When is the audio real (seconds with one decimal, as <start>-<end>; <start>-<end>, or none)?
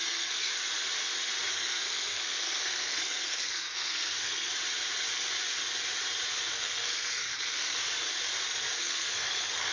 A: 0.5-1.5; 4.5-6.5; 7.8-8.8